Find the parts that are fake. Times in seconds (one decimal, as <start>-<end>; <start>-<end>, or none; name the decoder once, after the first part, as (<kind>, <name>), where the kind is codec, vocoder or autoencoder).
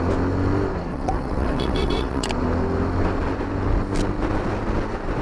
0.9-2.3 (vocoder, WaveNeXt)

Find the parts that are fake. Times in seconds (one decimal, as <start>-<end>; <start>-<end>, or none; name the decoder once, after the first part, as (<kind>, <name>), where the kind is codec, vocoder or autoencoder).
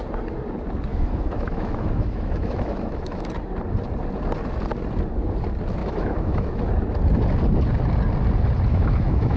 0.9-3.3 (autoencoder, DAC-VAE); 5.8-6.6; 8.7-9.4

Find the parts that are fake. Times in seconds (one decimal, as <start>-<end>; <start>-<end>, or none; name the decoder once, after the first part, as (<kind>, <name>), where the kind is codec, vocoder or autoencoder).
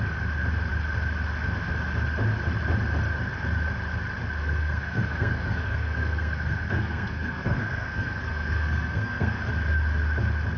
4.4-9.5 (codec, SNAC)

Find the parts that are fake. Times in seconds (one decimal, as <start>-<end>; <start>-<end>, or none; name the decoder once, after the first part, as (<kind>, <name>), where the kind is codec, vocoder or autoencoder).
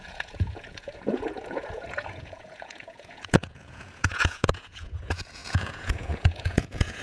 0.0-7.0 (vocoder, Vocos)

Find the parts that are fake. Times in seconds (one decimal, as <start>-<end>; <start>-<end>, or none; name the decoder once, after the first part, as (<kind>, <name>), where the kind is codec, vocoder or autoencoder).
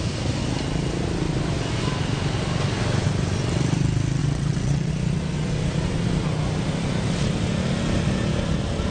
4.2-4.9 (vocoder, WaveNeXt)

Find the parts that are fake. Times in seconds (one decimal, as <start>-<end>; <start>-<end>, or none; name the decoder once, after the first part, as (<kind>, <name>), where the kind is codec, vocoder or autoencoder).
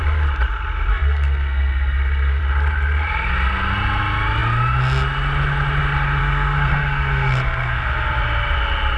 0.9-2.4 (codec, SNAC); 6.2-7.9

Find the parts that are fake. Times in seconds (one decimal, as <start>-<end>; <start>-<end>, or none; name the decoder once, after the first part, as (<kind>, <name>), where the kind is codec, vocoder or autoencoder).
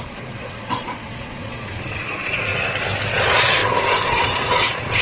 0.0-2.5 (vocoder, Vocos); 3.1-3.6; 4.1-5.0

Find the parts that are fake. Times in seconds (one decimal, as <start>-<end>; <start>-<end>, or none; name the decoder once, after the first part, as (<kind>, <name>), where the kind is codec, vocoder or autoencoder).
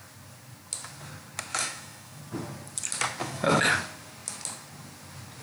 1.5-2.2 (autoencoder, DAC-VAE); 3.2-3.7